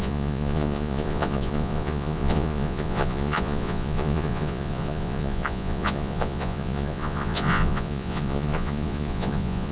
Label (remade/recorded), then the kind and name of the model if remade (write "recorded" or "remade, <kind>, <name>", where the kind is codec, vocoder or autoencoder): remade, vocoder, Vocos